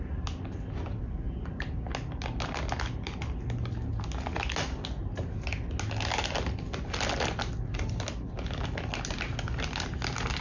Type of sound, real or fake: real